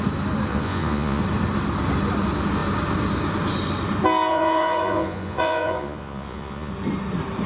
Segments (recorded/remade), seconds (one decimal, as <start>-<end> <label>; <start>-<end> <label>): 0.0-0.5 recorded; 0.5-1.2 remade; 1.2-4.3 recorded; 4.3-6.7 remade; 6.7-7.5 recorded